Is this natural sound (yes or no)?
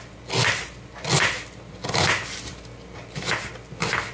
yes